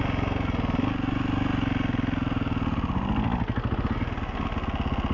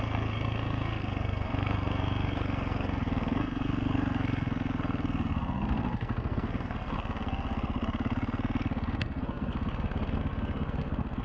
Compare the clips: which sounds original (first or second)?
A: first